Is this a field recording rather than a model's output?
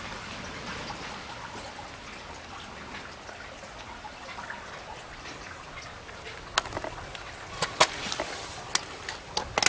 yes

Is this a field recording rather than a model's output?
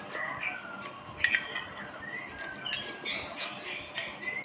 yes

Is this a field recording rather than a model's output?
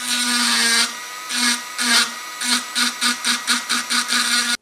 yes